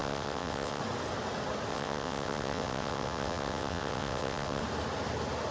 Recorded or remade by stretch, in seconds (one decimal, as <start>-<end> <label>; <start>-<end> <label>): 0.0-0.8 remade; 0.8-1.7 recorded; 1.7-4.6 remade; 4.6-5.5 recorded